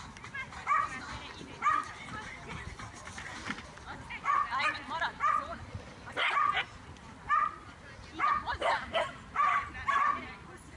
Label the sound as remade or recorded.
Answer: recorded